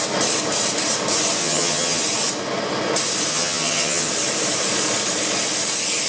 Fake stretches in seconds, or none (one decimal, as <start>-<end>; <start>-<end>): 1.4-2.0; 3.3-4.1